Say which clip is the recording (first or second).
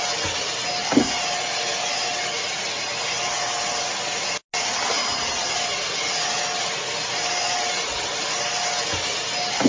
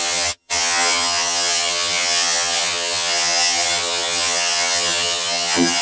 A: first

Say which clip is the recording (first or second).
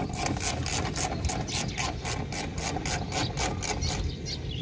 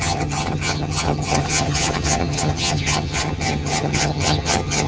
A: first